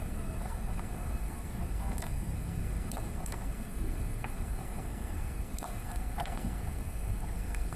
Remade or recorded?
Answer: remade